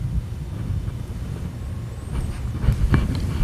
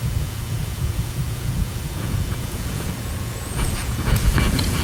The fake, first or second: second